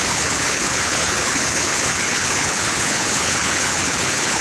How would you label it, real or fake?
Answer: fake